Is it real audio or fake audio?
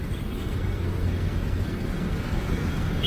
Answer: fake